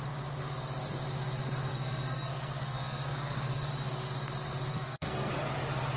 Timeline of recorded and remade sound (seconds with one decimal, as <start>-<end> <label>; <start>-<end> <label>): 0.0-1.7 recorded; 1.7-3.7 remade; 3.7-4.7 recorded; 4.7-5.3 remade; 5.3-6.0 recorded